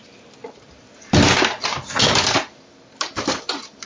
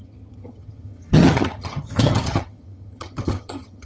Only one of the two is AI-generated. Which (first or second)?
second